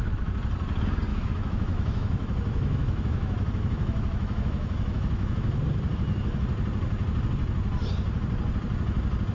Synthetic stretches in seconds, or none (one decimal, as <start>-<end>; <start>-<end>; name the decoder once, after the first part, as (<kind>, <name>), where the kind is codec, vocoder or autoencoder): 1.1-5.6 (autoencoder, DAC-VAE)